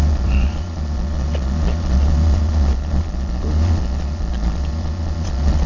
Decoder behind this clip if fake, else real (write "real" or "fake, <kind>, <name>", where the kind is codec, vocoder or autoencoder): fake, vocoder, Vocos